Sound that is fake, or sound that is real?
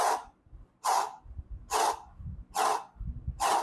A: real